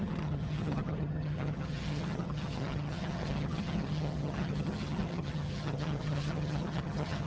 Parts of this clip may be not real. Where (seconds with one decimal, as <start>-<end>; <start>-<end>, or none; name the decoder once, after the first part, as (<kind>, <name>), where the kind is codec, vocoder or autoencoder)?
0.0-7.3 (vocoder, HiFi-GAN)